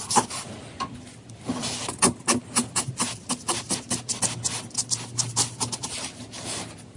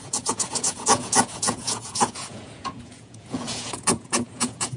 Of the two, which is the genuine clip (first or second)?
first